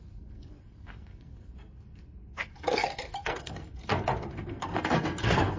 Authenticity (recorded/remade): remade